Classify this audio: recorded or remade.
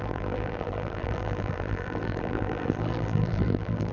remade